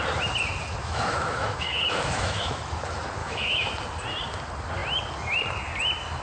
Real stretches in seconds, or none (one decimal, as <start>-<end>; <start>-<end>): 0.0-0.8; 2.6-3.2; 3.7-6.2